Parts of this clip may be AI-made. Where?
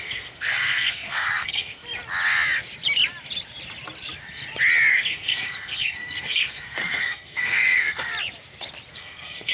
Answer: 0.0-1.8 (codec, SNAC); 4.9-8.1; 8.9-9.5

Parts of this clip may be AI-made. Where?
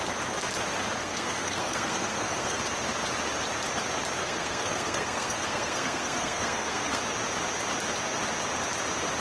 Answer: 1.0-2.6 (codec, SNAC); 4.2-7.0